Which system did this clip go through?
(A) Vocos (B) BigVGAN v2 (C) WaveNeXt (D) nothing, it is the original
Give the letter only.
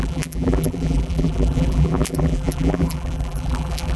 B